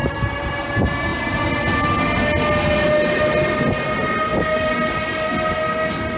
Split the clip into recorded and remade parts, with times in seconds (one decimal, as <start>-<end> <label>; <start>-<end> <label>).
0.0-0.7 remade; 0.7-6.2 recorded